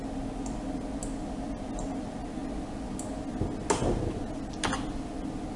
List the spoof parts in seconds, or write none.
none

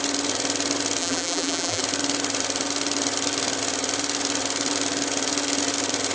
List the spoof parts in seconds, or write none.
1.0-1.8 (vocoder, BigVGAN v2)

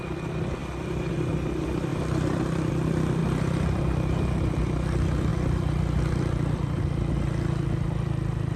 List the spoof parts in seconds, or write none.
0.6-1.1 (vocoder, BigVGAN v2); 1.9-2.7; 3.2-3.8; 5.3-7.1

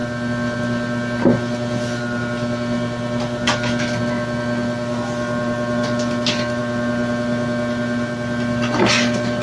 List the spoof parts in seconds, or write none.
none

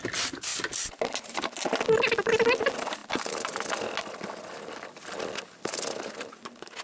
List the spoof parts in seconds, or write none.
none

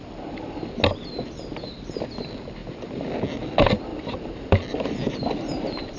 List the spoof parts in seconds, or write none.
3.9-6.0 (vocoder, BigVGAN v2)